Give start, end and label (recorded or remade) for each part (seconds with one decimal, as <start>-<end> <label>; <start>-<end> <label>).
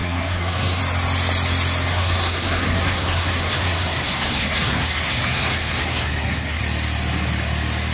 0.0-0.8 remade; 0.8-1.9 recorded; 1.9-6.6 remade; 6.6-7.9 recorded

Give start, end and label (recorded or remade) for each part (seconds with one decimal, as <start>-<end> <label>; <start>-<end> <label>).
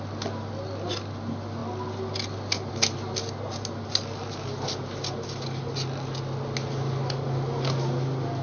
0.0-8.4 recorded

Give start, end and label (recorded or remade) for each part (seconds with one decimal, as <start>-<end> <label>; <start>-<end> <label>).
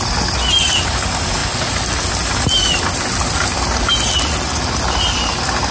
0.0-5.7 recorded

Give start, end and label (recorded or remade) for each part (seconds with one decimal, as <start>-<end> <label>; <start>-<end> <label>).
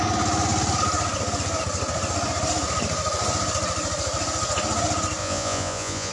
0.0-5.2 recorded; 5.2-6.1 remade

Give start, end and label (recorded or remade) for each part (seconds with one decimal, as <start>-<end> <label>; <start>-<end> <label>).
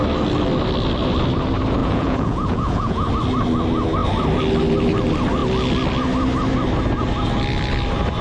0.0-1.8 recorded; 1.8-3.1 remade; 3.1-8.2 recorded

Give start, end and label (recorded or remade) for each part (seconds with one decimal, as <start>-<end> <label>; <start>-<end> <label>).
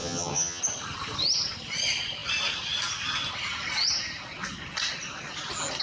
0.0-0.6 remade; 0.6-5.8 recorded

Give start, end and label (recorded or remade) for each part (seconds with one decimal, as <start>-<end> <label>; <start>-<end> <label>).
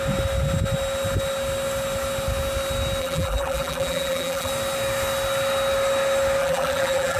0.0-3.0 recorded; 3.0-4.5 remade; 4.5-6.4 recorded; 6.4-7.2 remade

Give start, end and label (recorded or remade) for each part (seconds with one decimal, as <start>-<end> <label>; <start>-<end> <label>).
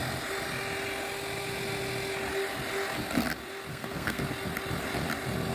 0.0-3.7 recorded; 3.7-4.2 remade; 4.2-5.5 recorded